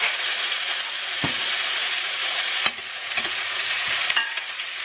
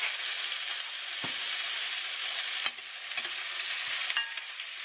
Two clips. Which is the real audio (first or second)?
second